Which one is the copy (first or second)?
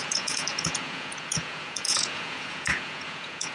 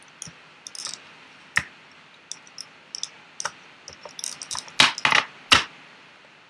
first